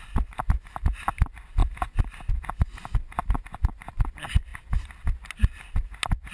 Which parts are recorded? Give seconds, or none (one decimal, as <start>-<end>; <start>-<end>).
0.0-6.3